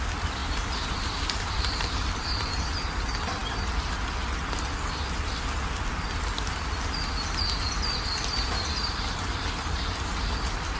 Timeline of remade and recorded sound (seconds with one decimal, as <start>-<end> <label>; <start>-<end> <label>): 0.0-0.4 recorded; 0.4-2.5 remade; 2.5-10.8 recorded